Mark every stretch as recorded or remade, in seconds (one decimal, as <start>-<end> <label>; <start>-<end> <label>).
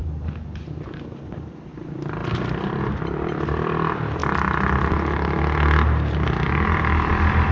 0.0-4.2 remade; 4.2-7.1 recorded; 7.1-7.5 remade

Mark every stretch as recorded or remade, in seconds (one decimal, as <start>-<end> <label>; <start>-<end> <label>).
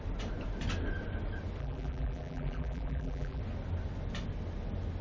0.0-1.6 recorded; 1.6-3.4 remade; 3.4-5.0 recorded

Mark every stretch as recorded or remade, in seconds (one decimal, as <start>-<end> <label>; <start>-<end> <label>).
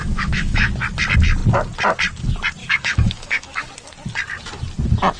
0.0-0.7 remade; 0.7-2.6 recorded; 2.6-3.7 remade; 3.7-5.2 recorded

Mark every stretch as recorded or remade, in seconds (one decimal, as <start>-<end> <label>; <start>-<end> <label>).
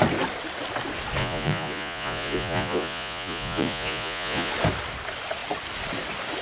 0.0-1.2 recorded; 1.2-4.5 remade; 4.5-6.4 recorded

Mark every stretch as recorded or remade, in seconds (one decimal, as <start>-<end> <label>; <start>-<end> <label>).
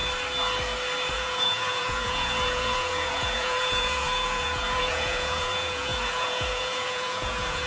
0.0-1.1 recorded; 1.1-7.7 remade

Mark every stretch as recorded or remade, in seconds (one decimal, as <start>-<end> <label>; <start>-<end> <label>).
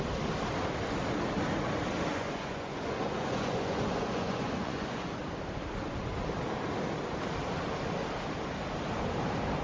0.0-2.1 recorded; 2.1-5.2 remade; 5.2-9.6 recorded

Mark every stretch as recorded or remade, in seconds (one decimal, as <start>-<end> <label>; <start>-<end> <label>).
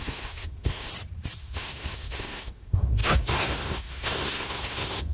0.0-0.9 remade; 0.9-1.4 recorded; 1.4-5.1 remade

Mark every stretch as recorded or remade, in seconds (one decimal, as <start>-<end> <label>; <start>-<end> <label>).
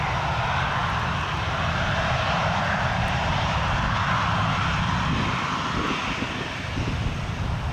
0.0-7.7 recorded